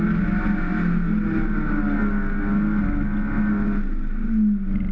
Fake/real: real